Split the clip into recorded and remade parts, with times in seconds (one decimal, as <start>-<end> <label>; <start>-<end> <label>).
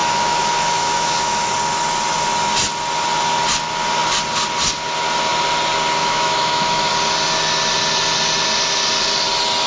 0.0-1.5 remade; 1.5-6.0 recorded; 6.0-6.9 remade; 6.9-9.7 recorded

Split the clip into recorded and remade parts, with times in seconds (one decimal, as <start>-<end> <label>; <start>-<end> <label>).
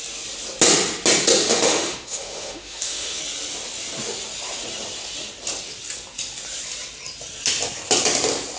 0.0-1.4 recorded; 1.4-3.2 remade; 3.2-8.6 recorded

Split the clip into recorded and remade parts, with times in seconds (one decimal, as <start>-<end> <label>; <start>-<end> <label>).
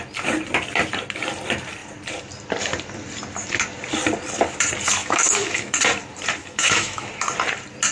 0.0-5.0 recorded; 5.0-5.8 remade; 5.8-6.4 recorded; 6.4-7.1 remade; 7.1-7.9 recorded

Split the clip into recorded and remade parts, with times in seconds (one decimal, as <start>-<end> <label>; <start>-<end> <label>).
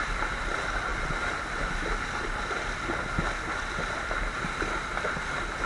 0.0-5.7 recorded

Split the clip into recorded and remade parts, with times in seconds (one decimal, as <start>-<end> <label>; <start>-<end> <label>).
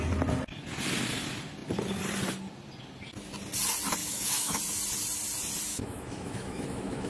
0.0-4.0 recorded; 4.0-4.6 remade; 4.6-5.7 recorded; 5.7-7.1 remade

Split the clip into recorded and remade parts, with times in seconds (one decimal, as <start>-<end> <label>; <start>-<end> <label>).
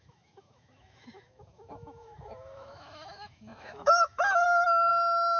0.0-5.4 remade